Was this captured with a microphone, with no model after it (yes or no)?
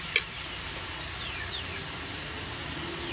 yes